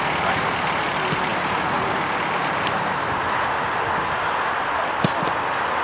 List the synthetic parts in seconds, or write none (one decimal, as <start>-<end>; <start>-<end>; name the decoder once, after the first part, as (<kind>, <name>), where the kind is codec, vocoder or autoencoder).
none